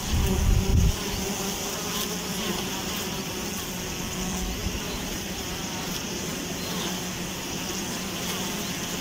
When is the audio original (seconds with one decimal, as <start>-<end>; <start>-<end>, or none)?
0.0-4.6; 6.3-9.0